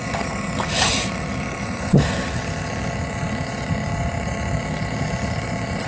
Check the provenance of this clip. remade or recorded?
remade